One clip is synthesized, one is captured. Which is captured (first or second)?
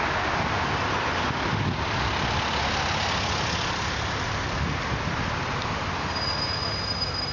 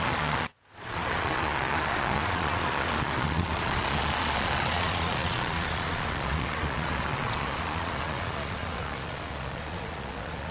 first